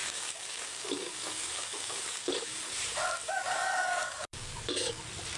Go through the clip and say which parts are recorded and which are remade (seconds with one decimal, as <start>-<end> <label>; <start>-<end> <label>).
0.0-2.7 remade; 2.7-3.2 recorded; 3.2-5.0 remade; 5.0-5.4 recorded